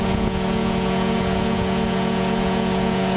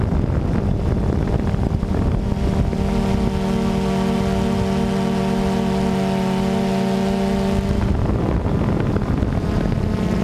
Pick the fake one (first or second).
first